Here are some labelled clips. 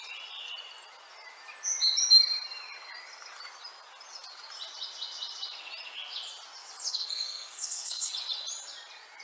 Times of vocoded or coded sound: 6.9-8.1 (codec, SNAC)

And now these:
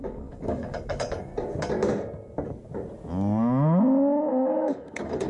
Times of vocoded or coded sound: 0.0-1.3 (codec, DAC); 4.5-5.3

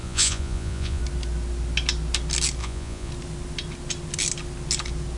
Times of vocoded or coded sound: 0.0-1.0 (vocoder, Vocos); 2.6-3.1

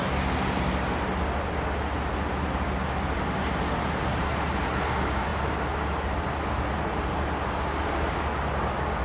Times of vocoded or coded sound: none

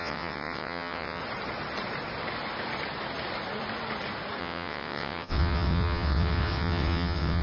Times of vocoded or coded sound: 0.0-1.2 (vocoder, WaveNeXt); 4.4-7.4

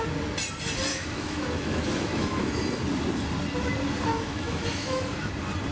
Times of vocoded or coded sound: 0.9-2.5 (autoencoder, DAC-VAE); 4.1-5.3

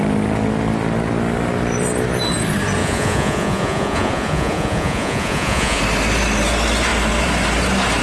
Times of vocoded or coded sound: 2.8-5.8 (vocoder, Vocos)

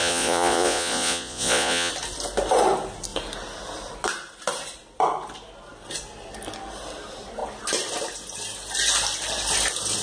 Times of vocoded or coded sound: 0.0-1.9 (vocoder, Vocos)